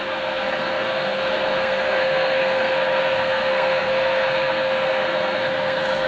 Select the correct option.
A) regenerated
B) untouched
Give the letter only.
A